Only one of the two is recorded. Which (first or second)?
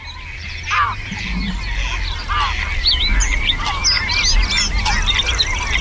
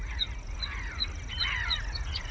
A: first